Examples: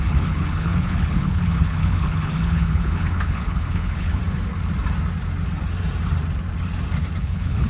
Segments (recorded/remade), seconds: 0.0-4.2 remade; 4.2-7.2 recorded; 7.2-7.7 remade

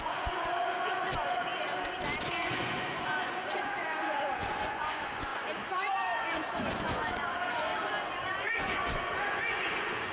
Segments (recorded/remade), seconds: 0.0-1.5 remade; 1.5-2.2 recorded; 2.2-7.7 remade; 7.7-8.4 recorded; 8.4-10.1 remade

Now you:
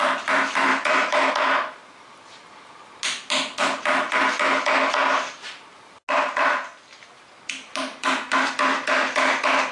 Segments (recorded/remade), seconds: 0.0-0.7 recorded; 0.7-1.3 remade; 1.3-9.7 recorded